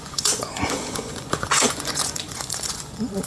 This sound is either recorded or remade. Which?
remade